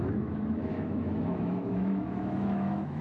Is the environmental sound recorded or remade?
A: remade